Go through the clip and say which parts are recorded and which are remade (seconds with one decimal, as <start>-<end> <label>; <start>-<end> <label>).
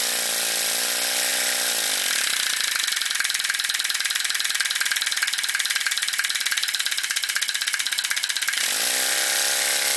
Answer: 0.0-10.0 recorded